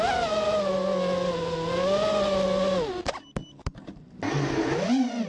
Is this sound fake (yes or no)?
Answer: no